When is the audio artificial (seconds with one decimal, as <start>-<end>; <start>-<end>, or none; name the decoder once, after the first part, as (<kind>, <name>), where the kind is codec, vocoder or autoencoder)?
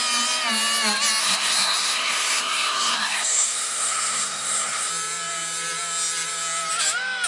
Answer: 1.2-4.9 (codec, SNAC)